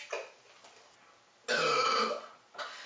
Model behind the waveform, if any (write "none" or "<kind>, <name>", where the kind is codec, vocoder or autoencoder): none